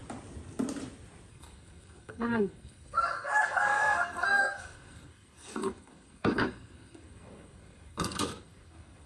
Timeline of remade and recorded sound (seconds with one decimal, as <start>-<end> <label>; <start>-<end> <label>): 0.0-1.3 recorded; 1.3-9.1 remade